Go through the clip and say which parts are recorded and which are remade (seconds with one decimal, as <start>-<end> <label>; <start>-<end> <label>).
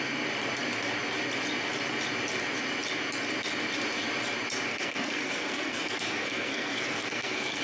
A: 0.0-4.7 recorded; 4.7-7.6 remade